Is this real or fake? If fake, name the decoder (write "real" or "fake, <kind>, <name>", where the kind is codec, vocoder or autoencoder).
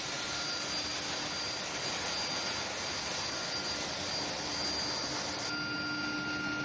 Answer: real